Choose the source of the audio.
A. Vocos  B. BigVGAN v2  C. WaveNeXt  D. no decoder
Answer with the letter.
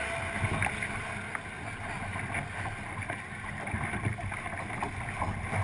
D